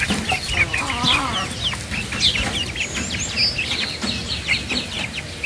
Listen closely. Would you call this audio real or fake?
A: real